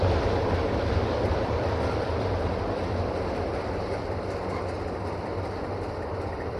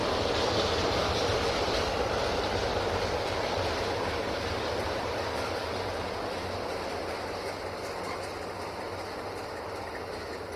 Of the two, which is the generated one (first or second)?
first